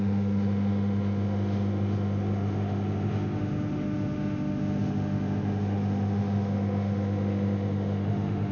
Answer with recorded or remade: remade